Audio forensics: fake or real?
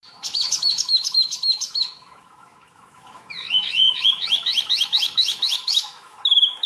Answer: fake